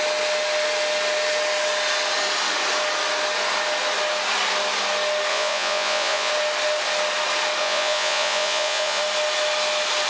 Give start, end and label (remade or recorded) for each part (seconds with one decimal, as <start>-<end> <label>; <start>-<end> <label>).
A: 0.0-5.3 recorded; 5.3-6.3 remade; 6.3-7.6 recorded; 7.6-9.0 remade; 9.0-10.1 recorded